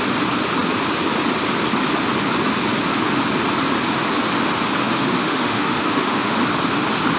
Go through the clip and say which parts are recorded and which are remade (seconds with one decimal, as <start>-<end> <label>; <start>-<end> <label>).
0.0-4.8 recorded; 4.8-6.4 remade; 6.4-7.2 recorded